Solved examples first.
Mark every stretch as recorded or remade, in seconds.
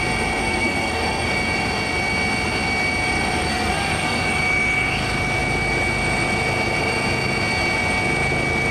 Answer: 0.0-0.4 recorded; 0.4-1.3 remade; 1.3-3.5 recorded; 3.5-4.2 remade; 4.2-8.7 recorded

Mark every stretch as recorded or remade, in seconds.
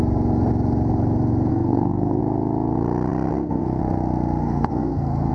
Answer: 0.0-1.5 recorded; 1.5-2.2 remade; 2.2-3.3 recorded; 3.3-3.8 remade; 3.8-4.4 recorded; 4.4-5.3 remade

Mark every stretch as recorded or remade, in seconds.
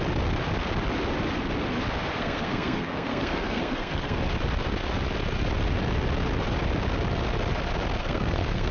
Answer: 0.0-2.2 recorded; 2.2-4.2 remade; 4.2-8.0 recorded; 8.0-8.7 remade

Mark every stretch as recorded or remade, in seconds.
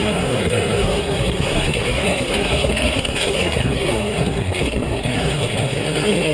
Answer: 0.0-6.3 remade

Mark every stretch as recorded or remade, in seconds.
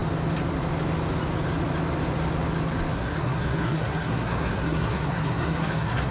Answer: 0.0-2.9 recorded; 2.9-6.1 remade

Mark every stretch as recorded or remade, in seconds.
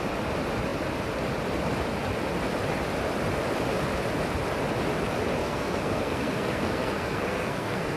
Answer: 0.0-5.4 recorded; 5.4-8.0 remade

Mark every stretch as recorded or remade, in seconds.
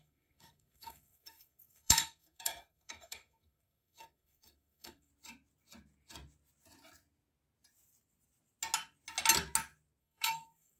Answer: 0.0-5.1 remade; 5.1-10.0 recorded; 10.0-10.8 remade